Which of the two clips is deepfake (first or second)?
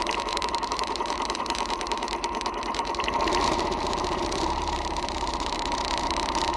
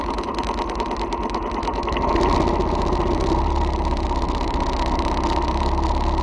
first